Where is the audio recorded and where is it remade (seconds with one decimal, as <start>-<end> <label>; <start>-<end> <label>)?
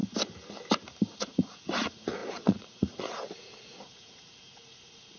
0.0-1.2 recorded; 1.2-5.2 remade